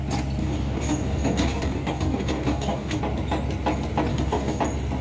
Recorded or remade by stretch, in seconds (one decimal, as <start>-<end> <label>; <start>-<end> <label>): 0.0-0.4 recorded; 0.4-3.0 remade; 3.0-4.1 recorded; 4.1-4.6 remade; 4.6-5.0 recorded